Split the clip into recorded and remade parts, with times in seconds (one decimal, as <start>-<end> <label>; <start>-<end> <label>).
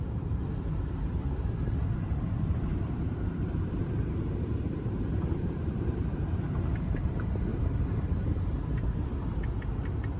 0.0-9.1 remade; 9.1-10.2 recorded